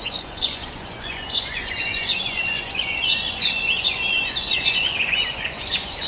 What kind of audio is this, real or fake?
fake